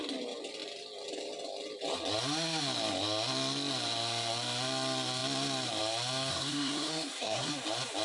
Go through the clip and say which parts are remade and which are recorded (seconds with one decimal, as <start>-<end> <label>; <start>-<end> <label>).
0.0-6.3 recorded; 6.3-7.5 remade; 7.5-8.0 recorded